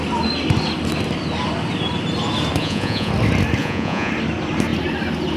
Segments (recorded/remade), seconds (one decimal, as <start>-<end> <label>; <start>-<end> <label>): 0.0-2.6 recorded; 2.6-3.1 remade; 3.1-3.6 recorded; 3.6-4.1 remade; 4.1-5.4 recorded